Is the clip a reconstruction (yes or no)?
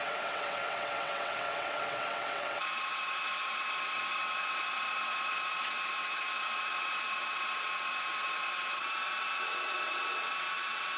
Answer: yes